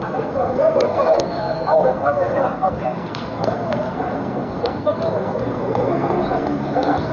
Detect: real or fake fake